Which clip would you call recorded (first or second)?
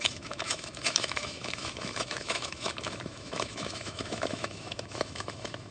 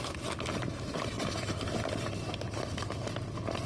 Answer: second